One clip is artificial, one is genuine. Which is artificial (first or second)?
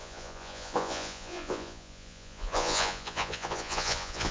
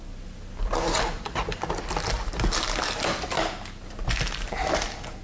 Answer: first